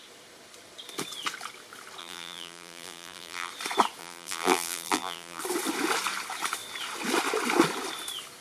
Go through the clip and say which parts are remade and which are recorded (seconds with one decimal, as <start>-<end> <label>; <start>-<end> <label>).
0.0-2.0 recorded; 2.0-3.5 remade; 3.5-4.0 recorded; 4.0-5.4 remade; 5.4-8.4 recorded